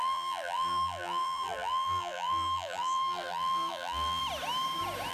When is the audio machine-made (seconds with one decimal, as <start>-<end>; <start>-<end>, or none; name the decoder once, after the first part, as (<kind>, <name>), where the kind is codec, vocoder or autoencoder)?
0.0-4.2 (vocoder, BigVGAN v2)